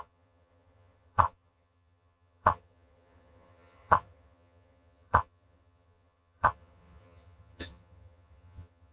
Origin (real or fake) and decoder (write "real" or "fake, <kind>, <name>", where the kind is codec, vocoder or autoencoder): fake, vocoder, HiFi-GAN